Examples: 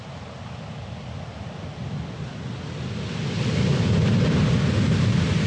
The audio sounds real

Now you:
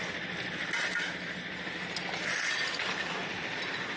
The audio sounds real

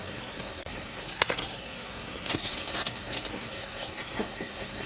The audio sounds fake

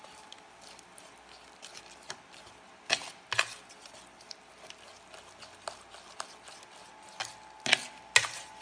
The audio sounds real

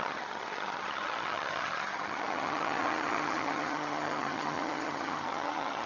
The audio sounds fake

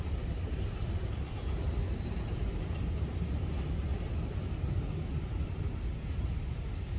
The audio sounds real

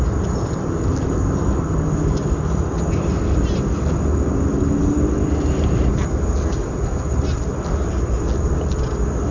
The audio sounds real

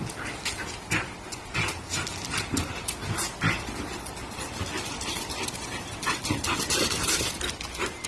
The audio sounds real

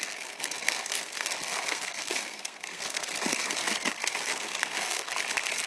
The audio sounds fake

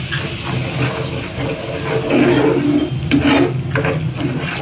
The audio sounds real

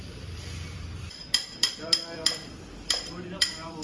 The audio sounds fake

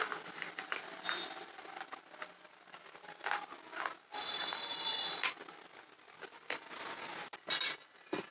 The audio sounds real